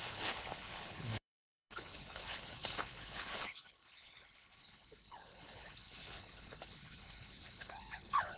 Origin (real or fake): fake